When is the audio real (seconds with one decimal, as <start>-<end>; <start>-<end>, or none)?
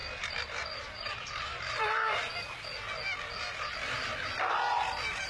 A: 2.3-4.5